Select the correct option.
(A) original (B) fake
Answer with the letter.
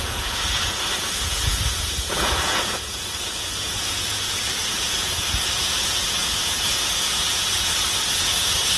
B